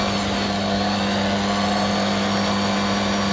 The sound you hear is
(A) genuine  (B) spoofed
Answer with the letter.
A